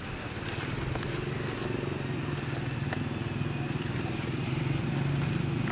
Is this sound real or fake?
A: real